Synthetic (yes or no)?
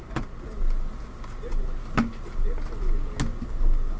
no